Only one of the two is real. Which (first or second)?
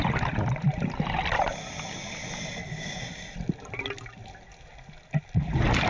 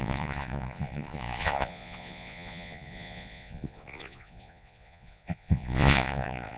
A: first